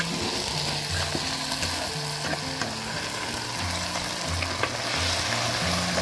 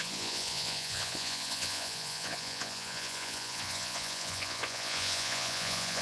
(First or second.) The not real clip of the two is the second